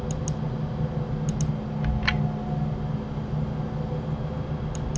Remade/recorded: recorded